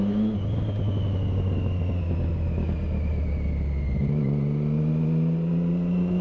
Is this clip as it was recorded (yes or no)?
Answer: yes